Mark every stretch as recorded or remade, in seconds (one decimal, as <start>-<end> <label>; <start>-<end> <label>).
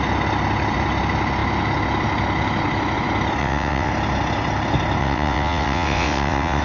0.0-3.4 recorded; 3.4-3.9 remade; 3.9-5.0 recorded; 5.0-6.6 remade